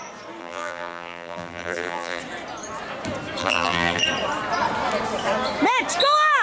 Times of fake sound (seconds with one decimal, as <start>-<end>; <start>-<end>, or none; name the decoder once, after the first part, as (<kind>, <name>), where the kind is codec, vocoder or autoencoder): 0.4-2.2 (vocoder, BigVGAN v2); 3.4-4.0